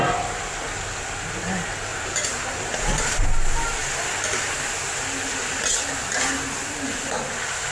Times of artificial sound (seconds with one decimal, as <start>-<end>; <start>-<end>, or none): 1.9-3.0